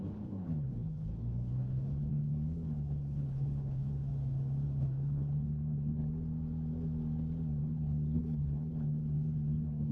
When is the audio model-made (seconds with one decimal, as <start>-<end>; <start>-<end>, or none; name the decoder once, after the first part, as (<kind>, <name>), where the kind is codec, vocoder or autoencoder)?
0.0-4.1 (codec, HILCodec); 4.8-6.0; 7.6-9.9